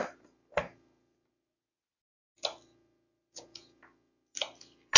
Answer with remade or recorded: recorded